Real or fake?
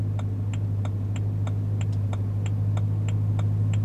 real